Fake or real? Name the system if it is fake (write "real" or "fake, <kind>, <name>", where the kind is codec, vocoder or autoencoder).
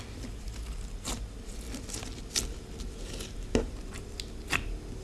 real